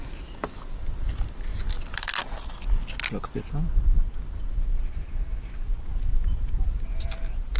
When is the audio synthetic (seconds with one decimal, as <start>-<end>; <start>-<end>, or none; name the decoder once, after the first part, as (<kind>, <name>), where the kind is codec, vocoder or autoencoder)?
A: none